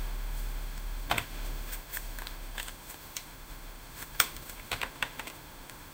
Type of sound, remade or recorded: remade